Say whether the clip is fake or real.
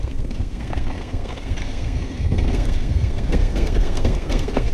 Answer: fake